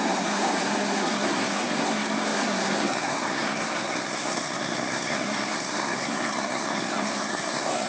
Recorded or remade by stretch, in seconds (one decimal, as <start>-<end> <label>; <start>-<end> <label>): 0.0-7.9 remade